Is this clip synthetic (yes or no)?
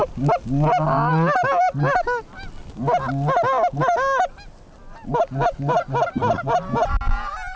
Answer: no